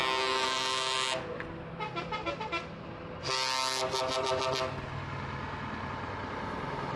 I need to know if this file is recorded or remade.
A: recorded